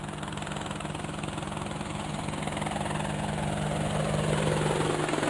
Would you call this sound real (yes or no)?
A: yes